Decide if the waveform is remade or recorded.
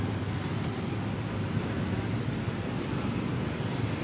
recorded